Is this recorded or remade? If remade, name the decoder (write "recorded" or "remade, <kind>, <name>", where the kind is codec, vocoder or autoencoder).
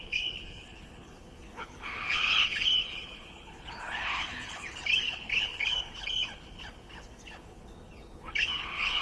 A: remade, codec, HILCodec